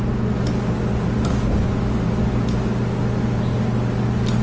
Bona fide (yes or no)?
yes